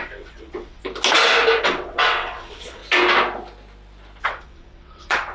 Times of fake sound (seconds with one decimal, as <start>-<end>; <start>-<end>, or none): 0.0-0.8; 1.6-2.8; 4.2-5.3